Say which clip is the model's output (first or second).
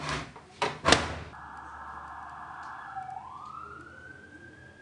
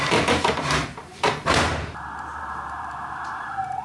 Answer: second